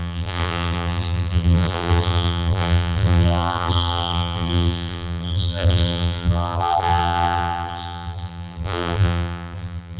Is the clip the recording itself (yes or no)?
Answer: no